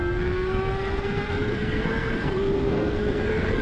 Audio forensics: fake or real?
fake